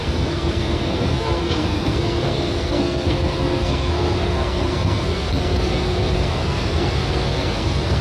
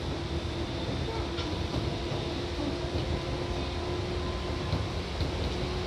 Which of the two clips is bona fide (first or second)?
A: second